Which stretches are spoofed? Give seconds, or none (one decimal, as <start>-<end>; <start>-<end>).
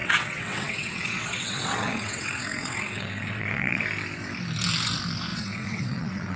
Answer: 0.0-3.8; 5.3-6.4